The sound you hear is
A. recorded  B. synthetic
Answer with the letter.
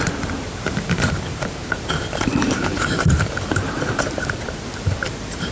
B